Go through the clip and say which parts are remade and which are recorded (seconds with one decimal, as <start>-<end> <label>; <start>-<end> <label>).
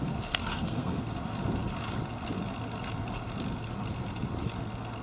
0.0-0.4 recorded; 0.4-1.0 remade; 1.0-5.0 recorded